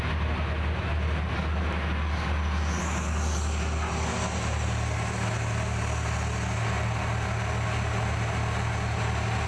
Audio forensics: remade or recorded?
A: recorded